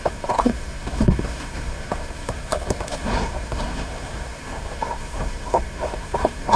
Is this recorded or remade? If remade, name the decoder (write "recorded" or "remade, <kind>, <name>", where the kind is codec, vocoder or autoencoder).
remade, codec, SNAC